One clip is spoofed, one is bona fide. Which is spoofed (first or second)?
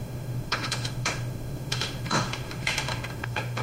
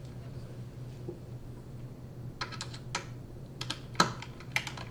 first